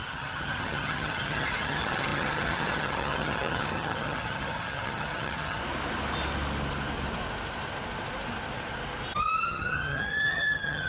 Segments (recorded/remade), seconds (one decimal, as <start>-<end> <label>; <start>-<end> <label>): 0.0-5.6 remade; 5.6-9.2 recorded; 9.2-10.9 remade